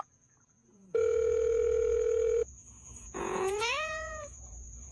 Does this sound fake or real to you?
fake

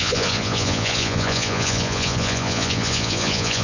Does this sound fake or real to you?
fake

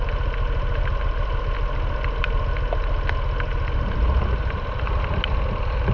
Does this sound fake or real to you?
real